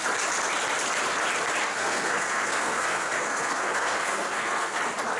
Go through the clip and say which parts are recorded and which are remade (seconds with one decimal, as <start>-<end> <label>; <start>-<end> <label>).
0.0-1.7 recorded; 1.7-4.8 remade; 4.8-5.2 recorded